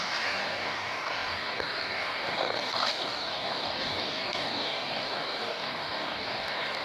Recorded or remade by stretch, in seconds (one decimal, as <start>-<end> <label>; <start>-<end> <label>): 0.0-6.8 remade